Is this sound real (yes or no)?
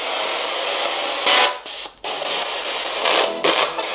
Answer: yes